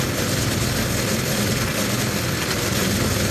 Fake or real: real